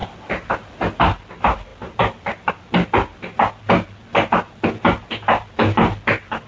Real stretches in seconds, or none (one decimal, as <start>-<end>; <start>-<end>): 0.0-6.5